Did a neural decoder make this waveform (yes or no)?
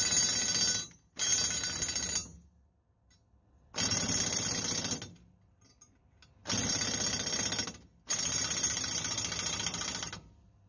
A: no